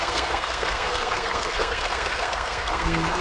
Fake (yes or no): yes